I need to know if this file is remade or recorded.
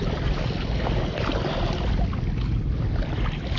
recorded